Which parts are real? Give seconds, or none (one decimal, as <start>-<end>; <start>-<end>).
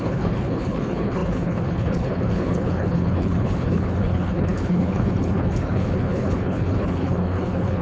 none